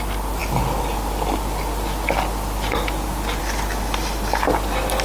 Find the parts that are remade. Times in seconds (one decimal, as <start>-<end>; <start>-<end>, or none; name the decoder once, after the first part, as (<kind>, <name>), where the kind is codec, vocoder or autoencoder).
none